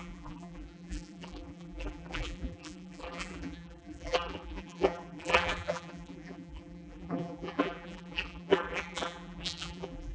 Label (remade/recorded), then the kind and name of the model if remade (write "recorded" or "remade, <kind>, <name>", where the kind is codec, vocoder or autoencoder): remade, vocoder, BigVGAN v2